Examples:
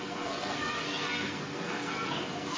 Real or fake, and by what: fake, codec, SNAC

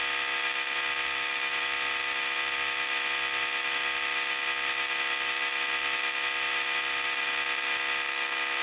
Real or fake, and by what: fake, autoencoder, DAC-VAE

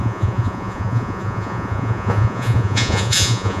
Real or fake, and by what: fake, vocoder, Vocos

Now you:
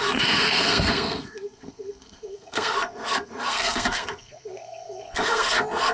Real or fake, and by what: fake, codec, SNAC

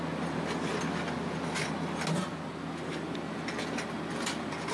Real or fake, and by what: real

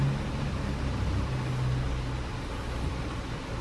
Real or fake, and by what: real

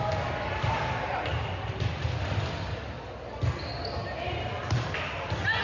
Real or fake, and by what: real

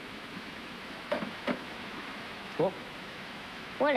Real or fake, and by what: fake, autoencoder, DAC-VAE